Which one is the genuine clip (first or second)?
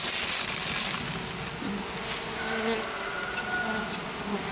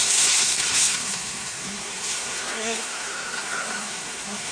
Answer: first